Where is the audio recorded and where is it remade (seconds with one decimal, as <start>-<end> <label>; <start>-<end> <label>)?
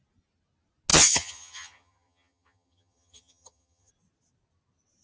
0.0-0.9 recorded; 0.9-3.9 remade; 3.9-5.0 recorded